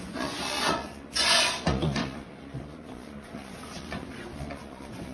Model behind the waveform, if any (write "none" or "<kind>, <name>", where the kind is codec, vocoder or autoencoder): vocoder, Vocos